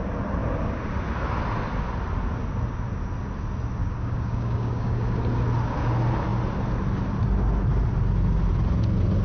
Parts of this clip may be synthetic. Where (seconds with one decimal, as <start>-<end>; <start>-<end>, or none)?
3.8-5.2